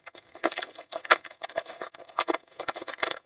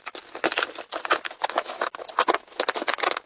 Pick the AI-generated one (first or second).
first